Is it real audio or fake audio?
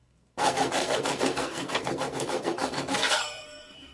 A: fake